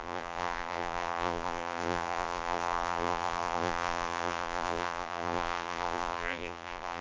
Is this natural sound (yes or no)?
no